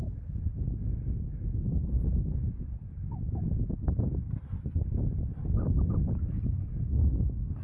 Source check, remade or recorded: recorded